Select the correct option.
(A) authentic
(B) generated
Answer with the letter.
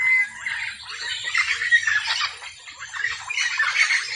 A